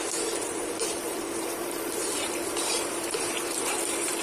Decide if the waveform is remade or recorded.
remade